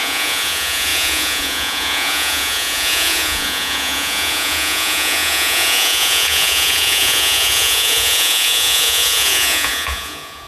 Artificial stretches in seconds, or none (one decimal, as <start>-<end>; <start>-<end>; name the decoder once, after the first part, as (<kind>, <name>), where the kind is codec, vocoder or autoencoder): 0.0-10.5 (vocoder, Vocos)